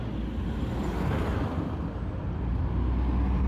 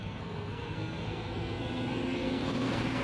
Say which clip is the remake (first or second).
second